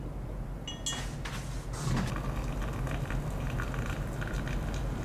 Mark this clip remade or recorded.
recorded